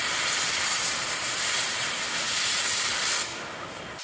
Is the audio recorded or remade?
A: recorded